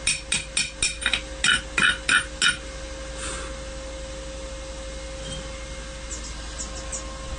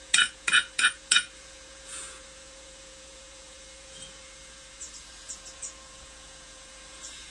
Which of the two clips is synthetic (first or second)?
second